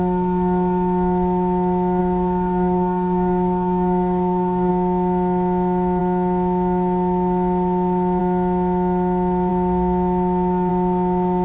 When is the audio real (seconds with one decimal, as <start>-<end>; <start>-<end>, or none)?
0.0-2.0; 4.7-11.4